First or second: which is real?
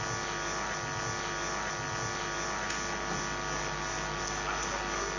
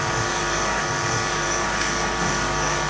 first